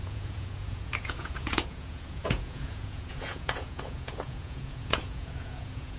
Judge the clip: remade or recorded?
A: remade